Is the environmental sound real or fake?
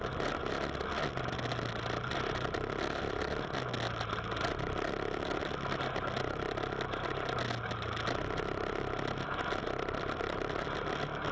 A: real